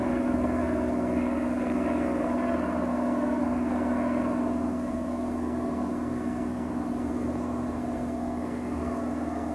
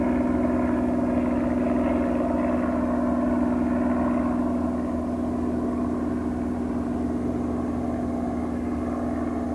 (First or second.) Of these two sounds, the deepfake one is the first